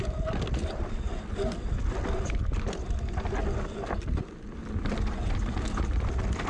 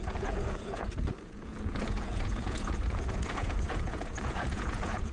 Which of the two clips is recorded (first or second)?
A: first